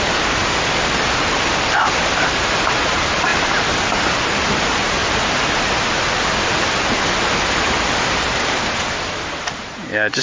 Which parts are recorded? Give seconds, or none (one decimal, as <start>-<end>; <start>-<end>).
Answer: 0.4-1.6; 3.3-4.0; 5.0-9.4